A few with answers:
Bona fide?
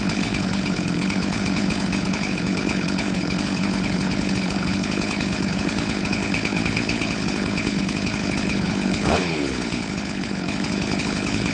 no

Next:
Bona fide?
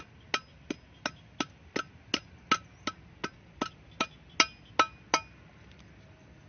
yes